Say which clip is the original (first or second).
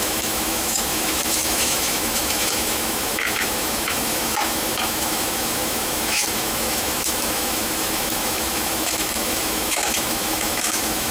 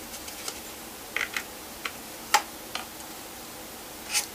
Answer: second